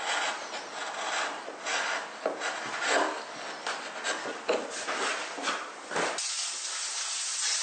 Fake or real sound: real